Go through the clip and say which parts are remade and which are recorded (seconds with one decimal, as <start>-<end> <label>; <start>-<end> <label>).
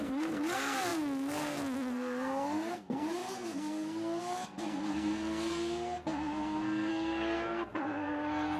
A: 0.0-8.6 remade